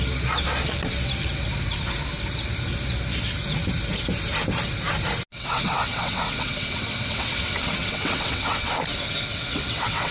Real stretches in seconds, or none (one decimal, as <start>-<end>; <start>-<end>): 0.0-5.3; 8.7-9.3